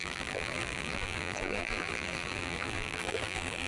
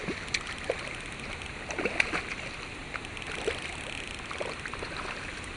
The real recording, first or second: second